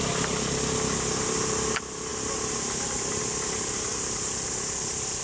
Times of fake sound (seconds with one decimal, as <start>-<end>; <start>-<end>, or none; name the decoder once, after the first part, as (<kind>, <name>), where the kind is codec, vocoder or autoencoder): none